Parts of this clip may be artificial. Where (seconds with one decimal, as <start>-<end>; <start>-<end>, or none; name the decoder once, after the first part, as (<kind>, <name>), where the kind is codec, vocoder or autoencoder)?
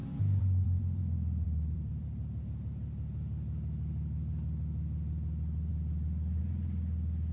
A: 0.0-2.4 (vocoder, BigVGAN v2)